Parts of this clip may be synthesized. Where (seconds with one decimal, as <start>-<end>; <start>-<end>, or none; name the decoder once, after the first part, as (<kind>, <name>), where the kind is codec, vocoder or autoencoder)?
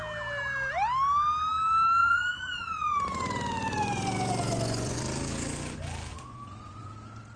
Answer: 2.0-5.0 (vocoder, Vocos); 6.1-6.9